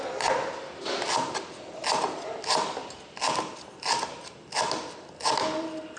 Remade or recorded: recorded